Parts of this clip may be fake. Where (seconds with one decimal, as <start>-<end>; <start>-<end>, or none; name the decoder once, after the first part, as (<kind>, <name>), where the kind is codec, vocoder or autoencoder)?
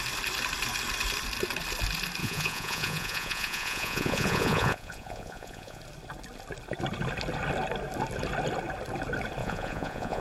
2.2-5.8 (vocoder, Vocos); 9.4-10.2